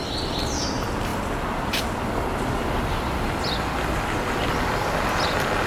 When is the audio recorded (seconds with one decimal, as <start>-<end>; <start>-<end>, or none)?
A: 0.0-5.7